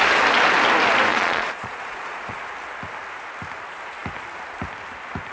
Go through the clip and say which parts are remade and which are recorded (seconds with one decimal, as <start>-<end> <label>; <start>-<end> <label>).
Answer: 0.0-1.1 recorded; 1.1-2.4 remade; 2.4-5.3 recorded

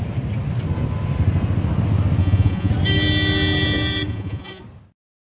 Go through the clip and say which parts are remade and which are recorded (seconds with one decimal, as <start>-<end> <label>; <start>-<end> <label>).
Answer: 0.0-2.2 recorded; 2.2-2.7 remade; 2.7-4.1 recorded; 4.1-4.6 remade; 4.6-5.2 recorded

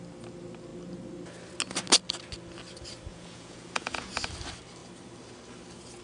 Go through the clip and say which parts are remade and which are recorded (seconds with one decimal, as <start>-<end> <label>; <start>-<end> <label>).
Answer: 0.0-3.1 recorded; 3.1-4.1 remade; 4.1-6.0 recorded